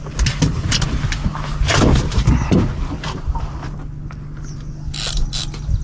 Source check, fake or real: real